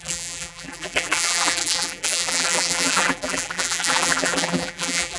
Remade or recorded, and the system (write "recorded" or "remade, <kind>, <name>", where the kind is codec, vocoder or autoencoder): remade, vocoder, BigVGAN v2